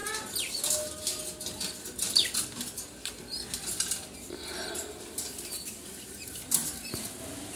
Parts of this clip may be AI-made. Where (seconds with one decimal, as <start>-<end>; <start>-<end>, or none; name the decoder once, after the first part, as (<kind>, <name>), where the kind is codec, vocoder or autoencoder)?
none